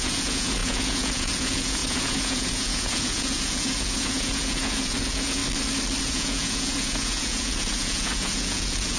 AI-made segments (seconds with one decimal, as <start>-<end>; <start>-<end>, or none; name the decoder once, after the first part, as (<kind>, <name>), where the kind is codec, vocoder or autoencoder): 0.0-5.4 (vocoder, Vocos); 6.0-9.0